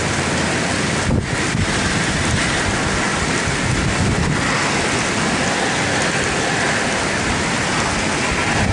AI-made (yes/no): no